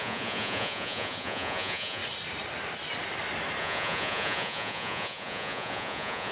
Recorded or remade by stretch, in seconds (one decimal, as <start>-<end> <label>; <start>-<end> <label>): 0.0-2.0 remade; 2.0-3.6 recorded; 3.6-6.3 remade